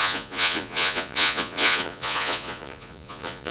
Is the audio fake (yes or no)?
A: yes